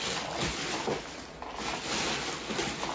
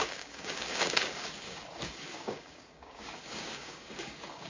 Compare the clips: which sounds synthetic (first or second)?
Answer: second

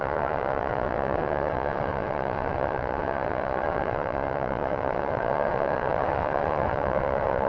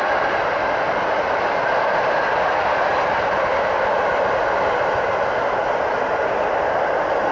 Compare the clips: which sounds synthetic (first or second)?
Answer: first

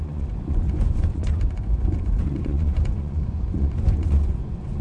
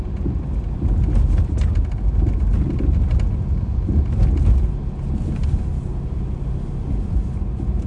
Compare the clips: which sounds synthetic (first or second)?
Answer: first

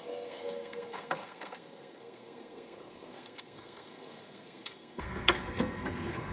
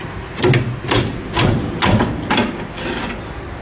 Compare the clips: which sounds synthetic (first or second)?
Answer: first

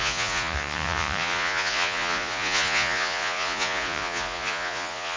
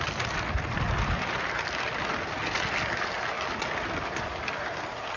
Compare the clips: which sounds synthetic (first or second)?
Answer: first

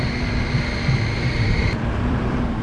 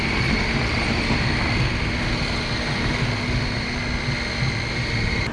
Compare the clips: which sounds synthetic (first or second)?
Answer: first